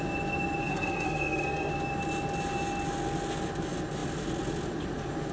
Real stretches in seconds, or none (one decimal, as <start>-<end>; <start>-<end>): 0.0-0.6; 1.7-5.3